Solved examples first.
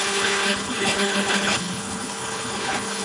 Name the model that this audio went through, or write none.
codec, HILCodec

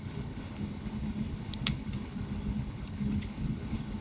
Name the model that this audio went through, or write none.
codec, HILCodec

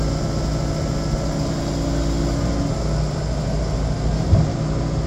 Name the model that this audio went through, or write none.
none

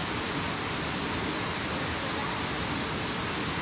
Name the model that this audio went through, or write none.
none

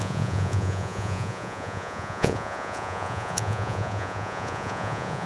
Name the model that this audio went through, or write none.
vocoder, Vocos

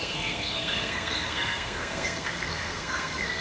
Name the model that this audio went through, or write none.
codec, SNAC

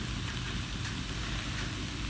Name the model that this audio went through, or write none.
none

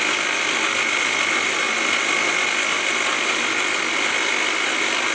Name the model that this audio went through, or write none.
none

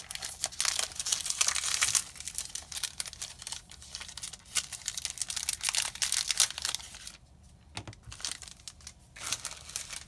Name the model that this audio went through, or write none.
none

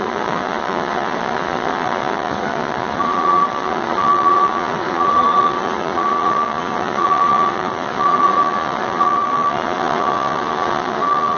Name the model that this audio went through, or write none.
vocoder, Vocos